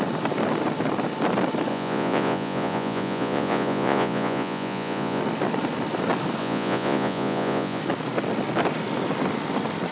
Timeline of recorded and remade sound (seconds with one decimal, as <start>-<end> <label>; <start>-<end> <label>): 0.0-1.7 recorded; 1.7-5.2 remade; 5.2-6.4 recorded; 6.4-7.8 remade; 7.8-9.9 recorded